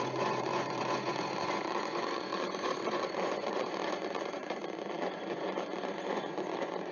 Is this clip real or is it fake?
fake